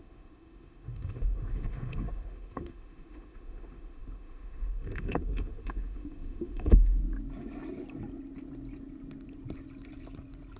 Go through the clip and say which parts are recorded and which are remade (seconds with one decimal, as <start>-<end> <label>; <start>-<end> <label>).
0.0-7.0 remade; 7.0-10.6 recorded